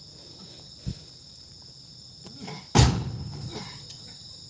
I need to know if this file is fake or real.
real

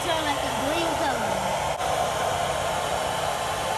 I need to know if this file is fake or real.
real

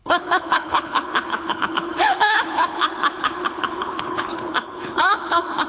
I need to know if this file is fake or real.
fake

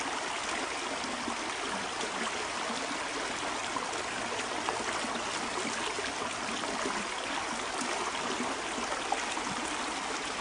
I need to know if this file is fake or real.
real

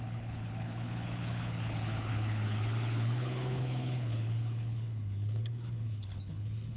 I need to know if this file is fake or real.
fake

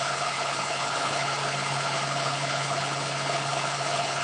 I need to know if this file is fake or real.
fake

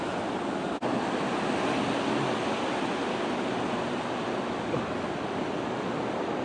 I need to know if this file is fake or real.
real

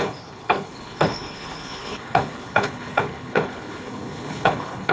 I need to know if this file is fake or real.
fake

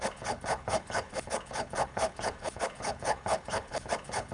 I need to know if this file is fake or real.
fake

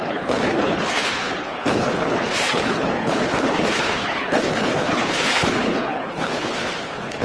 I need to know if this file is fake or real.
fake